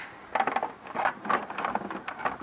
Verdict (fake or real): real